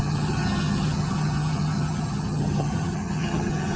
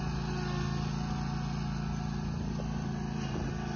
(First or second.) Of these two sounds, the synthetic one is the first